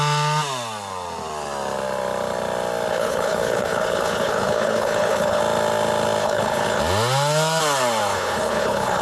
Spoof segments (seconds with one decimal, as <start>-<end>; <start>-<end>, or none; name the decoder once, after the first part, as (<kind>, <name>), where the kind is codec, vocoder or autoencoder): 2.9-5.4 (codec, HILCodec); 6.2-6.8; 8.1-9.0